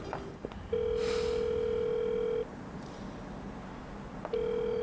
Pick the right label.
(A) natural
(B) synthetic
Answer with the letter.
A